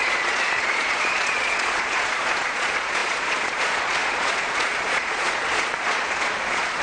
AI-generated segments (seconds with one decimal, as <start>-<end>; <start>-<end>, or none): 0.0-6.8